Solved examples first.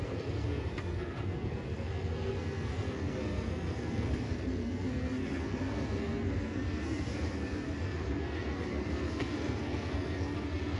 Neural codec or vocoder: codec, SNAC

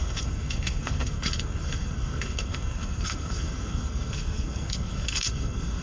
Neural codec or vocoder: codec, SNAC